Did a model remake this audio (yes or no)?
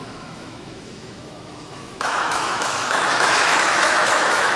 yes